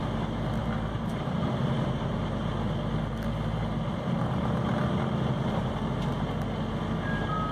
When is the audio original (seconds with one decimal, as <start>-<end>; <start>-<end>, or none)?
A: 0.0-0.6; 2.5-7.5